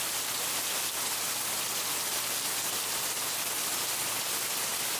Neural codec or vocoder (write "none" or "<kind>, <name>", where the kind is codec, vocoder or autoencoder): none